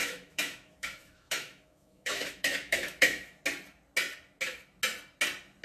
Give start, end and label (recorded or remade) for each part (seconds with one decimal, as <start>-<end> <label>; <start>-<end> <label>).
0.0-3.4 remade; 3.4-5.6 recorded